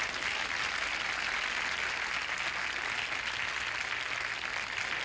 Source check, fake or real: real